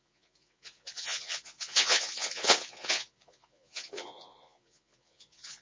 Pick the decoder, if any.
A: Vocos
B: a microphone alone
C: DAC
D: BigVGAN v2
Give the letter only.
A